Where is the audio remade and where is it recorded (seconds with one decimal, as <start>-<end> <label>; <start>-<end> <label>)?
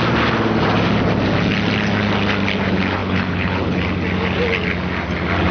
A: 0.0-3.0 recorded; 3.0-3.8 remade; 3.8-5.5 recorded